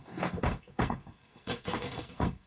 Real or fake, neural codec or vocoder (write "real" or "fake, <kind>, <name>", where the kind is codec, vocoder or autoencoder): fake, codec, SNAC